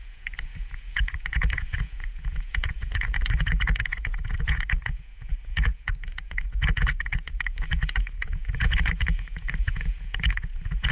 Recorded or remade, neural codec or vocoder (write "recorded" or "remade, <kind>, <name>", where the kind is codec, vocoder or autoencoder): remade, vocoder, Vocos